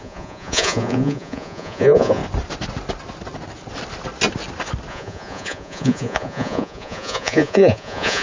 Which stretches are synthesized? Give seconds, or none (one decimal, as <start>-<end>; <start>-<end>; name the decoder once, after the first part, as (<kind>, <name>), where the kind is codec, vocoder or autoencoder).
0.0-2.2 (vocoder, Vocos); 4.9-8.2